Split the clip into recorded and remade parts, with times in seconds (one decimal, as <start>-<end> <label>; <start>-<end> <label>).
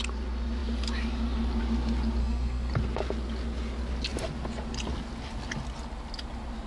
0.0-2.2 recorded; 2.2-2.7 remade; 2.7-6.7 recorded